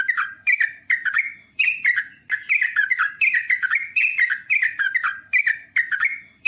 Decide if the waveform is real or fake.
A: fake